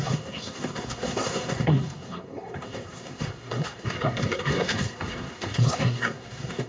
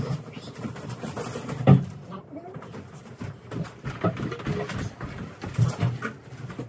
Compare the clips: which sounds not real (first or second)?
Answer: first